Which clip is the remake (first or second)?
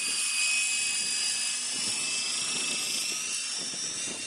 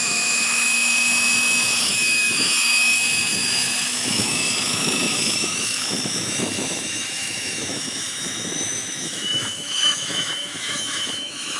second